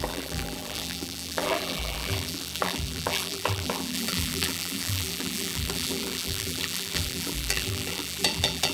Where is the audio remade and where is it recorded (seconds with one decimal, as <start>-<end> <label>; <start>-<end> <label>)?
0.0-8.7 remade